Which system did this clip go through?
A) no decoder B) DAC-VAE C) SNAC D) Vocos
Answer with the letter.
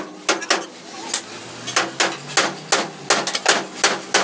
A